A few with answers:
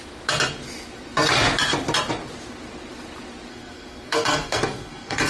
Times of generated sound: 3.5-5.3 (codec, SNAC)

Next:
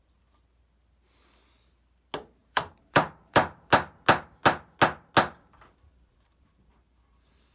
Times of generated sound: 2.4-3.7 (vocoder, BigVGAN v2)

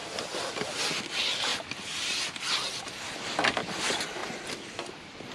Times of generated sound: none

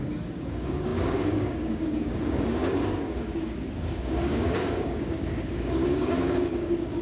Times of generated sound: 0.0-7.0 (codec, DAC)